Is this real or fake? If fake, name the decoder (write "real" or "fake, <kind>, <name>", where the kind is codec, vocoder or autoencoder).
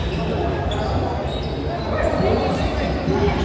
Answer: real